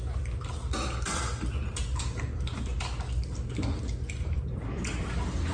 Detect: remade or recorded recorded